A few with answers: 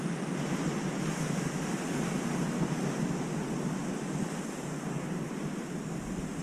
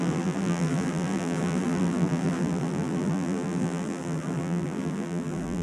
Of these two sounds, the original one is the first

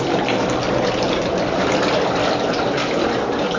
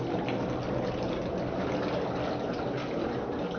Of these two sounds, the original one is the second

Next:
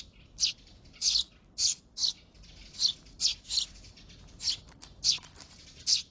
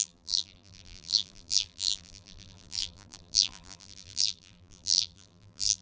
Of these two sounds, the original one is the first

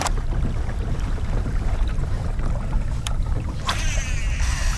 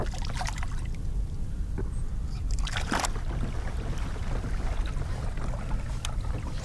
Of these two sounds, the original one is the second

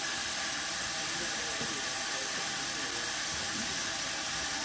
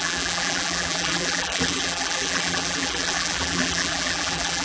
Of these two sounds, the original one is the first